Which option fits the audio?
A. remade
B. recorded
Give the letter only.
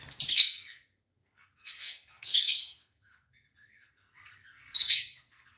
A